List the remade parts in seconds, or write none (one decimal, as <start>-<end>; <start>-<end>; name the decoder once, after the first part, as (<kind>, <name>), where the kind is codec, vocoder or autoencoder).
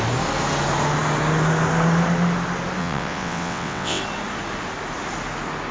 2.8-4.0 (vocoder, WaveNeXt)